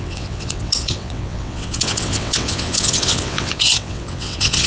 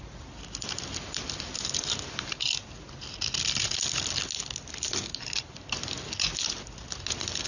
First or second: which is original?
second